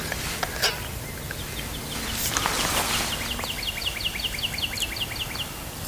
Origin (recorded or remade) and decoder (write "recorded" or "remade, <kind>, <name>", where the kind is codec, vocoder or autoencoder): recorded